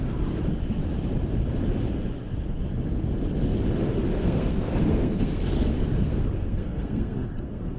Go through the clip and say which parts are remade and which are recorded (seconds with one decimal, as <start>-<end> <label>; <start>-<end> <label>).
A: 0.0-4.1 recorded; 4.1-7.8 remade